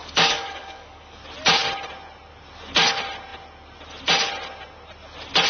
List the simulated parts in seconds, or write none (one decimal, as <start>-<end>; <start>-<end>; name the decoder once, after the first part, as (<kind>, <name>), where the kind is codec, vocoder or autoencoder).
0.0-1.2 (codec, DAC)